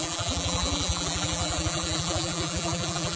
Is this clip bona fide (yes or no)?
no